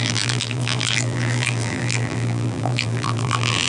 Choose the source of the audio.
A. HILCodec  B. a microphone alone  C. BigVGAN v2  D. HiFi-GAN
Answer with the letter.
C